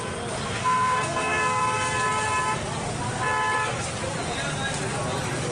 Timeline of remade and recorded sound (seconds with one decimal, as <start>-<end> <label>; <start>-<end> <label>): 0.0-0.6 recorded; 0.6-1.6 remade; 1.6-5.5 recorded